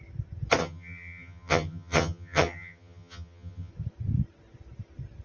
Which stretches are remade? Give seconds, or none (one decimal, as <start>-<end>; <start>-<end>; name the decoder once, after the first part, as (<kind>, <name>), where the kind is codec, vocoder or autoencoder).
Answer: 0.6-3.7 (vocoder, HiFi-GAN)